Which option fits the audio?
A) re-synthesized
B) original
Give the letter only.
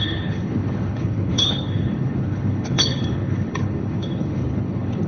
A